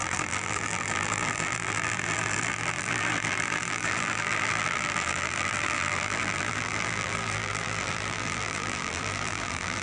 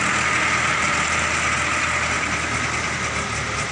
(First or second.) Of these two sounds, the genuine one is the second